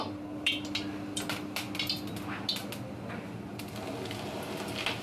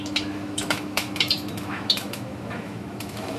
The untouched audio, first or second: first